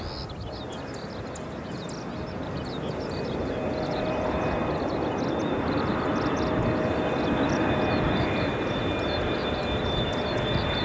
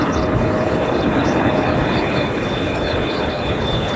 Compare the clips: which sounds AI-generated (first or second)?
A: second